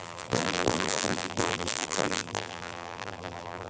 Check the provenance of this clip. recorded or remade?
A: remade